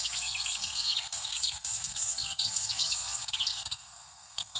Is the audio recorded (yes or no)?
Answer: no